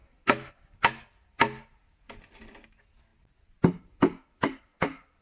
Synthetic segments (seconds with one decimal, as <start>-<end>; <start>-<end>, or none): 0.0-0.5